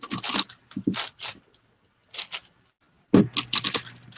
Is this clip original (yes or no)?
yes